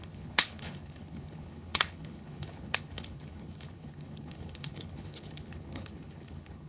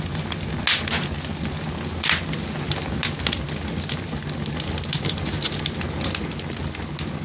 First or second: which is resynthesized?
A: first